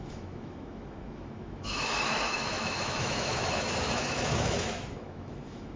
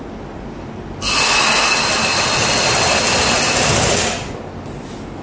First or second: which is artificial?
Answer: first